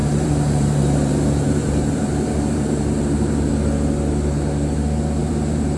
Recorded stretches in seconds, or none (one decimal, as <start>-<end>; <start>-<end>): 3.5-5.2